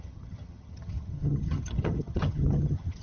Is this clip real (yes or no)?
no